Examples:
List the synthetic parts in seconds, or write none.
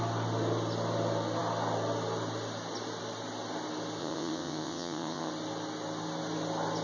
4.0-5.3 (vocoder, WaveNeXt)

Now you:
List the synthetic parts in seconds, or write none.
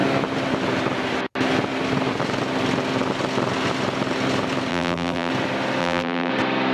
4.7-5.3 (vocoder, BigVGAN v2); 5.8-6.3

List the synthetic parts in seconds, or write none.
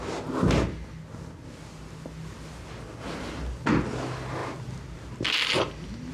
none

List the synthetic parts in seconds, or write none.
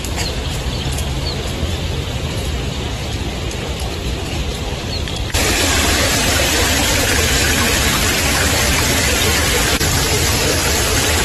4.5-7.6 (vocoder, BigVGAN v2)